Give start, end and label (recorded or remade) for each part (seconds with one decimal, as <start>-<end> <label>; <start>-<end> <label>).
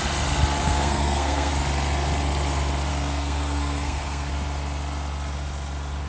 0.0-0.6 recorded; 0.6-1.5 remade; 1.5-2.9 recorded; 2.9-4.3 remade; 4.3-6.1 recorded